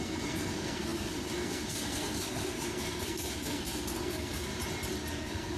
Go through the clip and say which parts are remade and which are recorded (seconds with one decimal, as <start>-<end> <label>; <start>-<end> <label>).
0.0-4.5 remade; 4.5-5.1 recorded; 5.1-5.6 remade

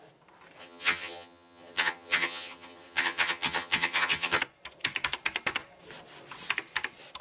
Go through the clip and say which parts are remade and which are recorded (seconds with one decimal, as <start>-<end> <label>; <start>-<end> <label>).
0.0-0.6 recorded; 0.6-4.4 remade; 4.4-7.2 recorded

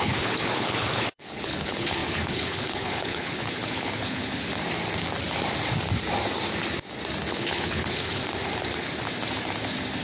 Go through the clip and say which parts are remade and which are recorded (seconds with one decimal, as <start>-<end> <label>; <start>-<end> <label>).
0.0-4.2 remade; 4.2-7.3 recorded; 7.3-8.2 remade; 8.2-10.0 recorded

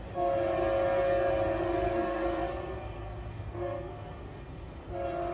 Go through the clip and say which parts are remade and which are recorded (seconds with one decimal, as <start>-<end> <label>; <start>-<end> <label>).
0.0-1.6 recorded; 1.6-4.8 remade; 4.8-5.3 recorded